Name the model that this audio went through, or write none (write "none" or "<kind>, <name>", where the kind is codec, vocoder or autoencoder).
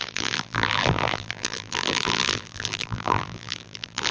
vocoder, BigVGAN v2